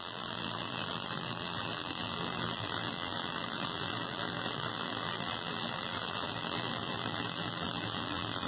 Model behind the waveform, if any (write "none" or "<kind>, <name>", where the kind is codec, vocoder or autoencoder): vocoder, BigVGAN v2